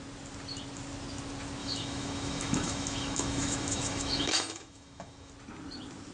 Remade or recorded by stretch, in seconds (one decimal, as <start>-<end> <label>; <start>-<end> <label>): 0.0-1.6 recorded; 1.6-5.3 remade; 5.3-6.1 recorded